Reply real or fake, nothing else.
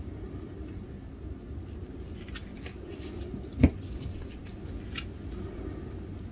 real